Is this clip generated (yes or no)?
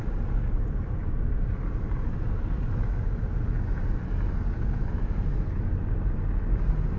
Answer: no